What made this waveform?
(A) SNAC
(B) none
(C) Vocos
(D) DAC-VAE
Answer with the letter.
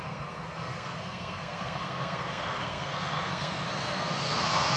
A